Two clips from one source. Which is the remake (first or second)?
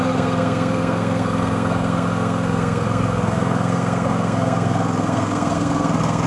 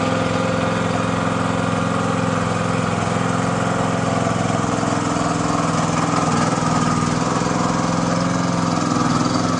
first